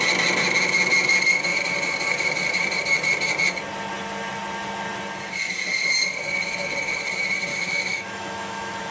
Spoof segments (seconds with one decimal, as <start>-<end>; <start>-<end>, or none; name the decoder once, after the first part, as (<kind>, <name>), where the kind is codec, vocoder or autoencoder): 7.5-8.9 (autoencoder, DAC-VAE)

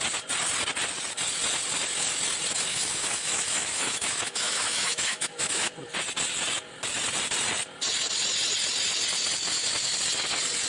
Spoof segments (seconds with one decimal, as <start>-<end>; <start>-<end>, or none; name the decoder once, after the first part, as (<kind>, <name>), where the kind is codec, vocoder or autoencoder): 2.7-5.7 (autoencoder, DAC-VAE)

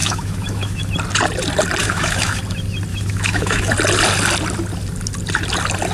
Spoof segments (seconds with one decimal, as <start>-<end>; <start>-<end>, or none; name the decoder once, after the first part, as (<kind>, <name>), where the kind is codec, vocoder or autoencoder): 0.0-0.9 (autoencoder, DAC-VAE); 1.8-2.4; 2.9-3.7

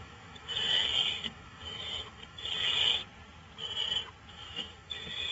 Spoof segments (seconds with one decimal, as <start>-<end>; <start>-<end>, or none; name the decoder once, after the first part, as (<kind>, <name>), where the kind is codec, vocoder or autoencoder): 0.0-3.0 (autoencoder, DAC-VAE); 4.3-5.3

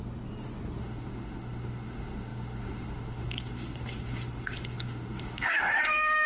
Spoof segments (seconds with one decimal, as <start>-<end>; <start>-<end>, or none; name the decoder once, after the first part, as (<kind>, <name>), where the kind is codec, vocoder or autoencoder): 0.8-6.3 (autoencoder, DAC-VAE)